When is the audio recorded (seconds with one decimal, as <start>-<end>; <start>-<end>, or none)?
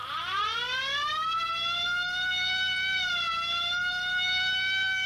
0.0-5.1